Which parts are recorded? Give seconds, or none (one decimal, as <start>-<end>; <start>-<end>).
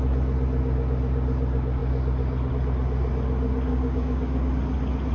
0.0-3.7; 4.5-5.1